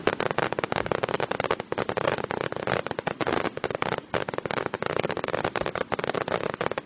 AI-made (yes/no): no